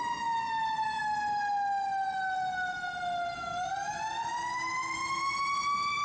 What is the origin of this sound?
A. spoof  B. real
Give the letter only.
B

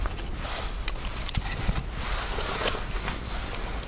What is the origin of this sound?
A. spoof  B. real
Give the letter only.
B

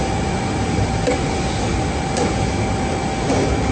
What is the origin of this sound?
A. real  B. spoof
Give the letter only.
A